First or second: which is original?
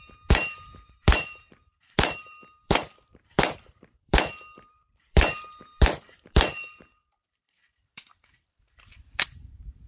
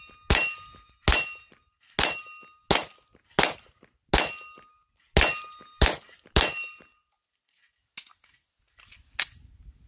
second